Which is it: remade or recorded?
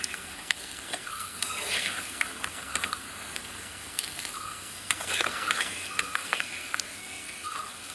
remade